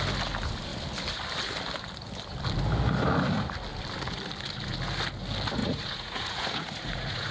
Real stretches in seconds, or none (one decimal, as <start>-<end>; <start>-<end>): 0.0-5.6